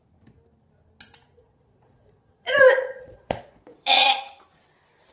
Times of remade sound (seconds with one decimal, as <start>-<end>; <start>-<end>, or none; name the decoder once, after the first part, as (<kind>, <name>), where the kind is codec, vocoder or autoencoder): 1.4-4.2 (vocoder, Vocos)